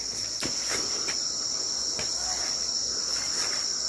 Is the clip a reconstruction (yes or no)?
no